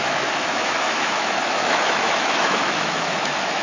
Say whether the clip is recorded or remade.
remade